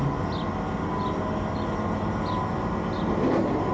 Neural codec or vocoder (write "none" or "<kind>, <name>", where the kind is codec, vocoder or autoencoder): none